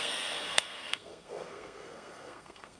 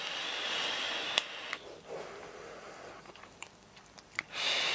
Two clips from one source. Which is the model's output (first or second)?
first